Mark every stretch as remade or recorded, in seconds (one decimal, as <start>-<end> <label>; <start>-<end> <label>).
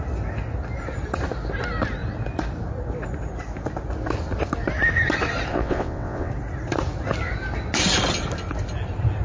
0.0-5.5 recorded; 5.5-6.3 remade; 6.3-9.2 recorded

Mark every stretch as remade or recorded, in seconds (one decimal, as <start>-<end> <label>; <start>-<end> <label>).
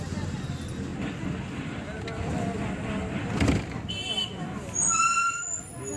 0.0-6.0 recorded